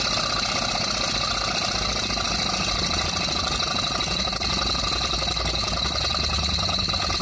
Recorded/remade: recorded